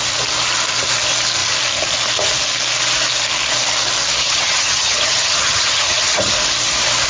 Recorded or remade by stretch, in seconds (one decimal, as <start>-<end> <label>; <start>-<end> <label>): 0.0-4.2 recorded; 4.2-6.3 remade; 6.3-7.1 recorded